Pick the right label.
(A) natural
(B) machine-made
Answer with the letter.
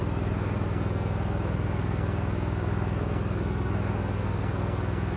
B